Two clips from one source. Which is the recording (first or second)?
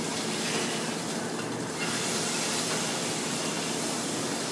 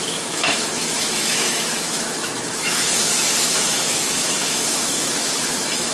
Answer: first